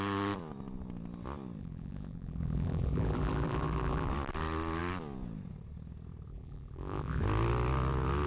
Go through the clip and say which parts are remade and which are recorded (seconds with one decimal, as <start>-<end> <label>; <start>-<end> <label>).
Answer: 0.0-1.6 recorded; 1.6-4.1 remade; 4.1-6.3 recorded; 6.3-7.2 remade; 7.2-8.3 recorded